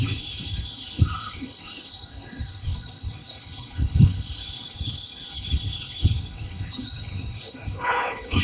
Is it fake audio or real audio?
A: fake